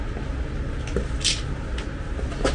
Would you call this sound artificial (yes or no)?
no